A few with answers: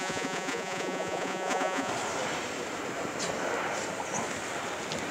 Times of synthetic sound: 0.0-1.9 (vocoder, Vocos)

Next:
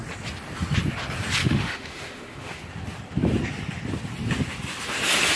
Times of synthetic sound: 1.4-2.6 (autoencoder, DAC-VAE)